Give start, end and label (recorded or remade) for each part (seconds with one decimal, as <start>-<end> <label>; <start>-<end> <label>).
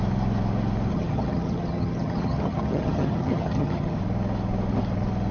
0.0-0.9 recorded; 0.9-4.0 remade; 4.0-5.3 recorded